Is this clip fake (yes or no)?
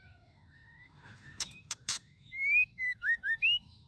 yes